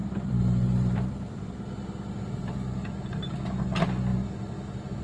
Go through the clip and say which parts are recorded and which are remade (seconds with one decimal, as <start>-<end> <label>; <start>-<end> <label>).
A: 0.0-1.6 remade; 1.6-5.0 recorded